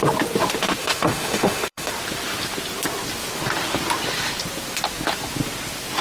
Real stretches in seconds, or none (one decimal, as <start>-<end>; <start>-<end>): 0.0-0.8; 1.9-6.0